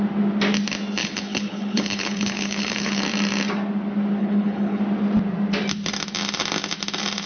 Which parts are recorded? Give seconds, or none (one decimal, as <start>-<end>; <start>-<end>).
0.0-1.0; 3.0-4.2; 4.8-7.3